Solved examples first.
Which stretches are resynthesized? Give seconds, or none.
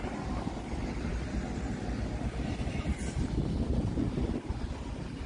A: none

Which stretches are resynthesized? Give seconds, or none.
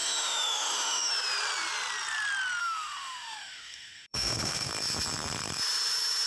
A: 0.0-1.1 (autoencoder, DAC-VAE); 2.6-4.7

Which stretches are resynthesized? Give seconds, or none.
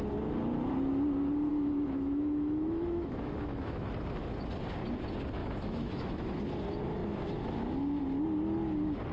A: 1.5-3.9 (autoencoder, DAC-VAE); 5.4-6.4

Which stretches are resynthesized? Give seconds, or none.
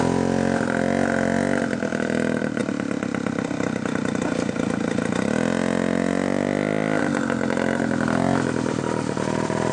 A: none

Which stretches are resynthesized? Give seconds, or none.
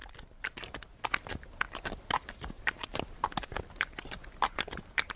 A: none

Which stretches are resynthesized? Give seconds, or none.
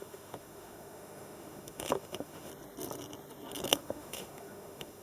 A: 0.0-2.5 (autoencoder, DAC-VAE); 3.7-5.0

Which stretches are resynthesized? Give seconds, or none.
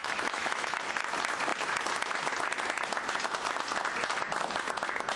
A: 0.0-0.8 (autoencoder, DAC-VAE)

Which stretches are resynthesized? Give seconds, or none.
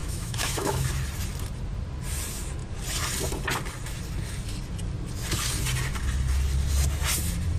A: 0.0-0.9 (autoencoder, DAC-VAE)